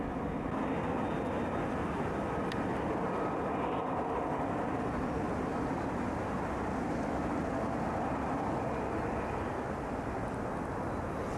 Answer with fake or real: real